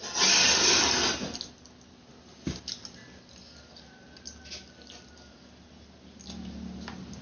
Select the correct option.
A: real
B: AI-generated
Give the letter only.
A